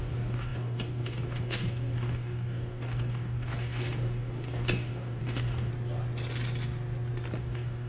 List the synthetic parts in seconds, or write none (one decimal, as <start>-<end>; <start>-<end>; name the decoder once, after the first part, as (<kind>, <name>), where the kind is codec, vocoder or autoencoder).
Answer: 0.0-5.7 (codec, DAC); 7.4-7.9